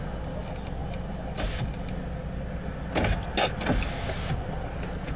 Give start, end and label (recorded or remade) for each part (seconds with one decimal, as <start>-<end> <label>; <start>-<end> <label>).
0.0-5.2 recorded